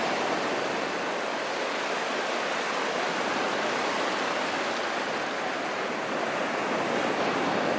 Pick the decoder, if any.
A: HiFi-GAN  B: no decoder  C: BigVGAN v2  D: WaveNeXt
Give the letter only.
B